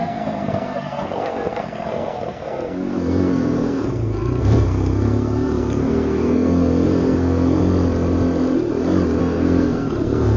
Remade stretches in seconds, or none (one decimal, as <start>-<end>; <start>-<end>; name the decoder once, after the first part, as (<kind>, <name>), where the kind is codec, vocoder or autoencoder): 0.0-7.6 (codec, SNAC); 9.2-10.4